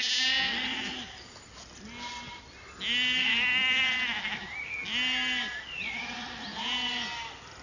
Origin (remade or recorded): recorded